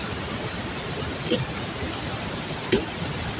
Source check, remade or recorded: recorded